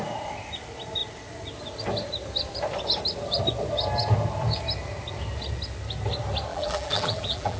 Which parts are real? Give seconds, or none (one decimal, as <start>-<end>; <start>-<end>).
0.0-6.5